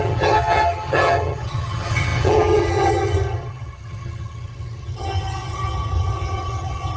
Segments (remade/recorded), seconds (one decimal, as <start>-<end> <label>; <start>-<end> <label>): 0.0-7.0 remade